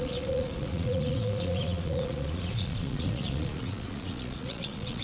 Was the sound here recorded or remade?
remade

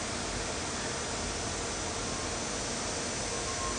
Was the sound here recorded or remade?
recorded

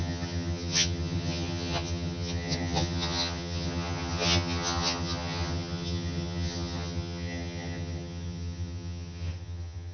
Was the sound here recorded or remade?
remade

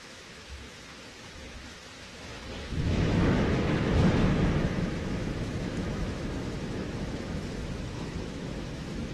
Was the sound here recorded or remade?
remade